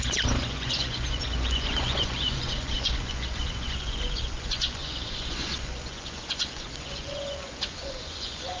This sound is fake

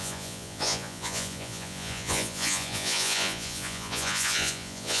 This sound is fake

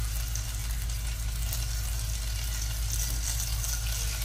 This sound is real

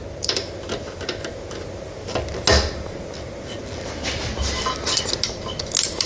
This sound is real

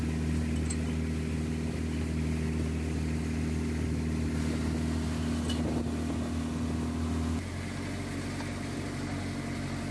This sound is real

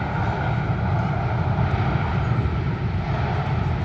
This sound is real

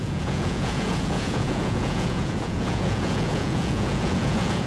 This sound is fake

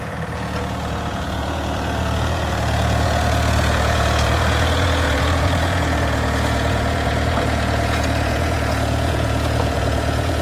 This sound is fake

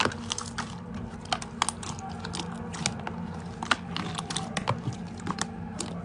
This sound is real